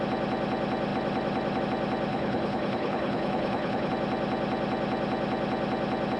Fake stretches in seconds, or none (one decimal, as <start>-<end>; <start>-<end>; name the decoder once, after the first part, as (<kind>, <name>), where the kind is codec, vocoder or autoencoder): 2.1-3.9 (codec, HILCodec)